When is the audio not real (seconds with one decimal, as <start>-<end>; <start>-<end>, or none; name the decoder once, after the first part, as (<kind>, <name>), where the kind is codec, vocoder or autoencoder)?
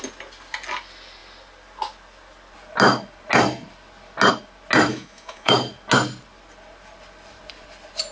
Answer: 4.9-5.5 (autoencoder, DAC-VAE)